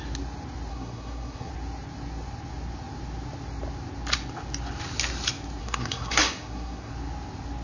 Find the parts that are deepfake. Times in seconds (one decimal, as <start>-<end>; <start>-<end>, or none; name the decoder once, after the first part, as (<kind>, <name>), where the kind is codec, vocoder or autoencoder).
0.7-1.5 (codec, SNAC); 5.6-6.9